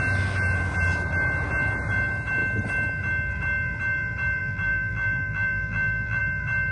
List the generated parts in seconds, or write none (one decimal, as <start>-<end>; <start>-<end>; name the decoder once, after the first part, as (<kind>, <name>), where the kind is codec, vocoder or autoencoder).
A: 4.4-6.2 (vocoder, BigVGAN v2)